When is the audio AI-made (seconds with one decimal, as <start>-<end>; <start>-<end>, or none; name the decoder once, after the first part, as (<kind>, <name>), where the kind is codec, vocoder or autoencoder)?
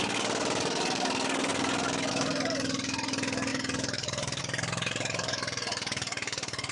0.0-6.7 (codec, DAC)